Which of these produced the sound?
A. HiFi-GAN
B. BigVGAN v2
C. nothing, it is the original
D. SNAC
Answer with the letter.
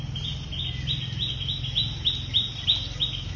C